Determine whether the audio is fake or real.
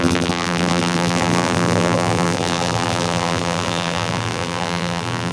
fake